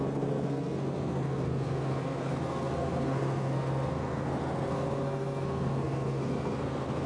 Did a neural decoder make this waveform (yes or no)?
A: yes